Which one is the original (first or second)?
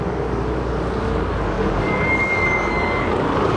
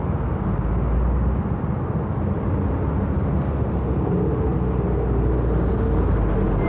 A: second